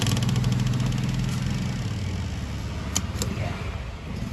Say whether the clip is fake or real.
real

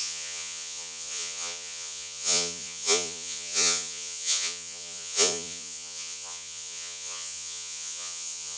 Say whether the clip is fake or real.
fake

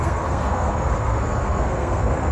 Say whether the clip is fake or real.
fake